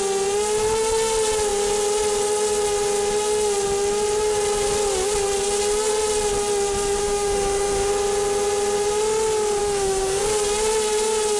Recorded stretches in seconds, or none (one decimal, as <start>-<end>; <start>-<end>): 0.0-7.0; 7.9-9.6; 10.2-11.4